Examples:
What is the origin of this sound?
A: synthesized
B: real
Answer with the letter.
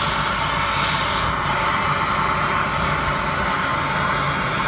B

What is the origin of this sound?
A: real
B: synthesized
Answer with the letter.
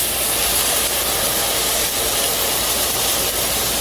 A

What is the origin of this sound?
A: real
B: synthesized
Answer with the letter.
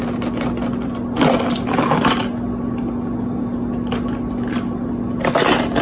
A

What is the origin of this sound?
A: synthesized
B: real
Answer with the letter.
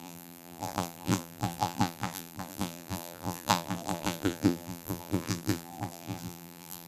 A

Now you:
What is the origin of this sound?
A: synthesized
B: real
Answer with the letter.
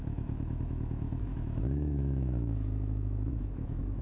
A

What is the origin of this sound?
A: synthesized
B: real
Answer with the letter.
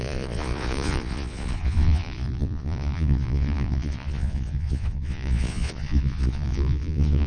A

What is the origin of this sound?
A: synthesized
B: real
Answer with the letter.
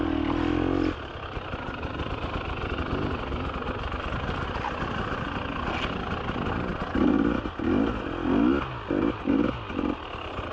B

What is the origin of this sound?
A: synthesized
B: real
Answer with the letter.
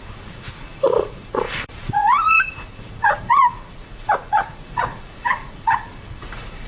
A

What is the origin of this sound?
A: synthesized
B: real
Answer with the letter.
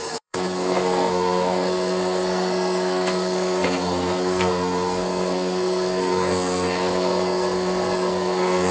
A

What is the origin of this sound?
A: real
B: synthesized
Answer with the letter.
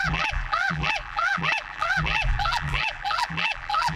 B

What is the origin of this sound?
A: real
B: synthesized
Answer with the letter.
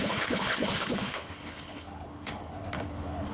B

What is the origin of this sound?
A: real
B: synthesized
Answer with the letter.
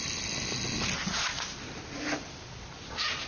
A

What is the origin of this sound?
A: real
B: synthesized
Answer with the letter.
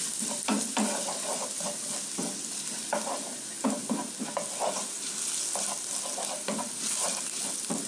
A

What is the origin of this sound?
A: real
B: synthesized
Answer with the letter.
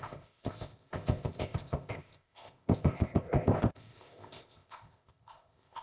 B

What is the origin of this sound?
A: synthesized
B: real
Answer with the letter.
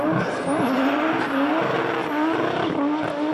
B